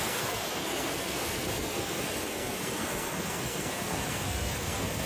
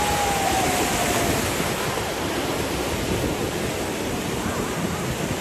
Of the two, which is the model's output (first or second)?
first